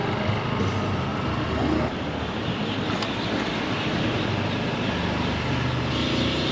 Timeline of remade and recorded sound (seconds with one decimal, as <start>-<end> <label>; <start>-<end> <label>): 0.0-6.5 recorded